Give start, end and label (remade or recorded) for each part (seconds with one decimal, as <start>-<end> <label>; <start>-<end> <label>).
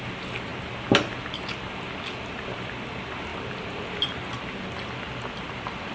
0.0-5.9 recorded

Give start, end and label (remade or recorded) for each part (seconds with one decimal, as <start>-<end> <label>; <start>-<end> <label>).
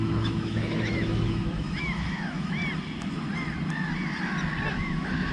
0.0-2.6 remade; 2.6-4.7 recorded; 4.7-5.3 remade